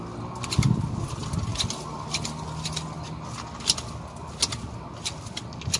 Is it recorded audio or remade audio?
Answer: recorded